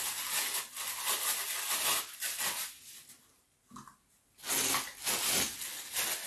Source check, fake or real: real